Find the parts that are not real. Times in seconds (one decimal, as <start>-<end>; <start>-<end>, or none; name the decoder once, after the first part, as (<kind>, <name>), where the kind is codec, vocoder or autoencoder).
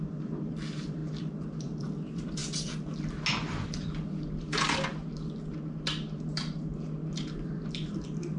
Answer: 0.0-2.4 (vocoder, BigVGAN v2); 7.4-8.4